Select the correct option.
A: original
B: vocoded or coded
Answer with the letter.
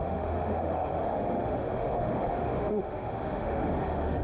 B